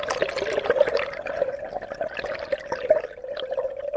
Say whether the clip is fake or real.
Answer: real